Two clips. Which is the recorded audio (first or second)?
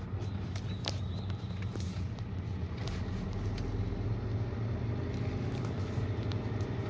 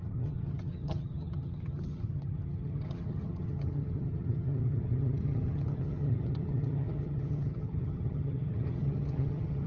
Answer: first